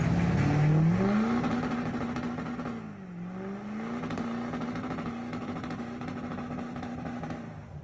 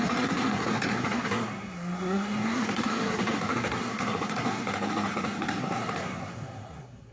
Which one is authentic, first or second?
first